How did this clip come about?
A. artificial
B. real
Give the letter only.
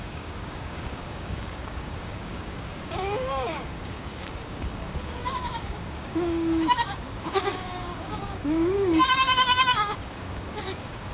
A